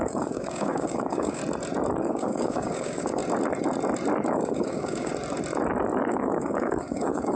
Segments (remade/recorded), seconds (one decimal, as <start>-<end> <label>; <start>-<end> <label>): 0.0-1.4 remade; 1.4-2.0 recorded; 2.0-3.2 remade; 3.2-4.3 recorded; 4.3-5.1 remade; 5.1-6.1 recorded; 6.1-7.4 remade